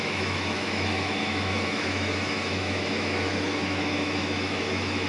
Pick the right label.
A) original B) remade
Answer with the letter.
B